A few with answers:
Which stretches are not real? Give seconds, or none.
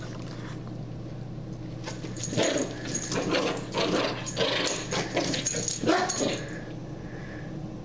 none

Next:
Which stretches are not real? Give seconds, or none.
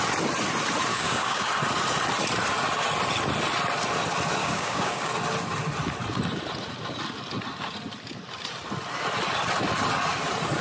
0.9-1.5 (codec, DAC); 4.4-5.1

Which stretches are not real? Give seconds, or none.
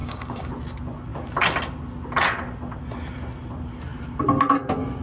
0.0-0.5 (codec, DAC)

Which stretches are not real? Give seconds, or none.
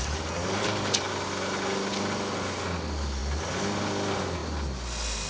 0.4-1.1 (codec, DAC)